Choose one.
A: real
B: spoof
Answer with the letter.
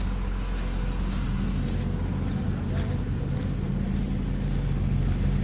A